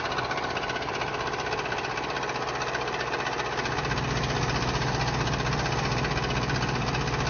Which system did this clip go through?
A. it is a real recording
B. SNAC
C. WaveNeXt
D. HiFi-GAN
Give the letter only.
A